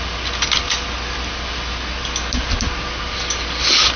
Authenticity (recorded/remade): recorded